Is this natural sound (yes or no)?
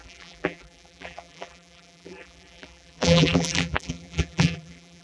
no